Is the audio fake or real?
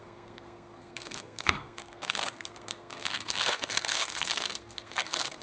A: fake